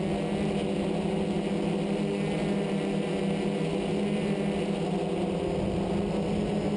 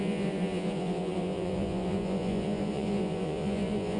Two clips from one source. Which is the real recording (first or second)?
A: first